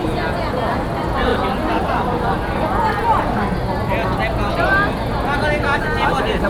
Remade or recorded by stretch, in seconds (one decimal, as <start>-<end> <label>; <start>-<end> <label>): 0.0-1.3 recorded; 1.3-3.3 remade; 3.3-6.5 recorded